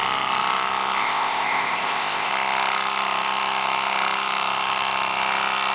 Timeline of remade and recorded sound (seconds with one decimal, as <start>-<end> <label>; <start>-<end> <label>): 0.0-1.0 recorded; 1.0-2.3 remade; 2.3-5.7 recorded